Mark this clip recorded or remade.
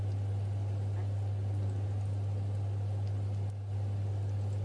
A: recorded